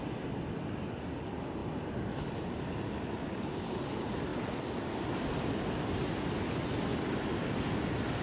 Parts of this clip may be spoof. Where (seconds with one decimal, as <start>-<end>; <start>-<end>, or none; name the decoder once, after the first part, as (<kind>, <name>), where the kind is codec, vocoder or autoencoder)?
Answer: none

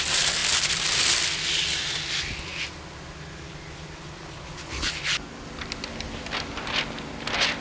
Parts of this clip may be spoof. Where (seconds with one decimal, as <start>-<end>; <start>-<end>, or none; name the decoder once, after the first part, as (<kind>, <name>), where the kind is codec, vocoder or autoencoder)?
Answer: none

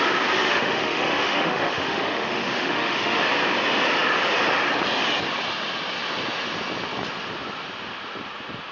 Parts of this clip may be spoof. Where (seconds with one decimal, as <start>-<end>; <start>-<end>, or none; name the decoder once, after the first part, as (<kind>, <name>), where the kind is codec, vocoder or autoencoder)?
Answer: 0.4-3.2 (autoencoder, DAC-VAE)

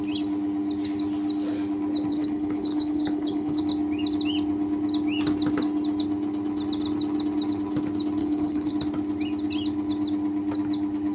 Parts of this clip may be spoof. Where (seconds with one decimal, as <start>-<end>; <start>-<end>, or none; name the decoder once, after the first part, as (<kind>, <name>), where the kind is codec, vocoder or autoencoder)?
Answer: 2.1-3.6 (codec, HILCodec); 8.2-8.7

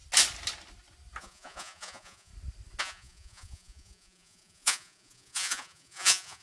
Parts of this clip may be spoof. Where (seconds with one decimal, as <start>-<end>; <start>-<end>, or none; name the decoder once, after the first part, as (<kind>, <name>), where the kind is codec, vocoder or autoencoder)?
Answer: 1.2-2.3 (vocoder, Vocos); 2.8-6.4

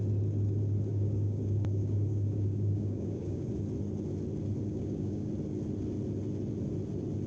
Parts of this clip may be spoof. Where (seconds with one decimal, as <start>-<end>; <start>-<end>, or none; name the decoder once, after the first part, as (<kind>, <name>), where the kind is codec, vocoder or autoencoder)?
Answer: 0.9-3.5 (codec, DAC); 4.7-5.3

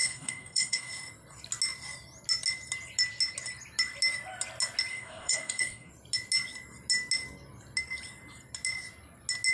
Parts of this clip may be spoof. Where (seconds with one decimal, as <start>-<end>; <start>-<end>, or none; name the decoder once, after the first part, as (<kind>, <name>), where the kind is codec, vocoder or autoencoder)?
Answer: 0.0-0.9 (codec, DAC); 4.9-5.9